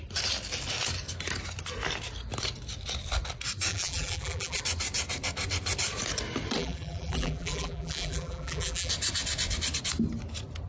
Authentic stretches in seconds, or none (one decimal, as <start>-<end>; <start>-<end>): 0.0-3.7; 4.6-6.6; 8.9-10.7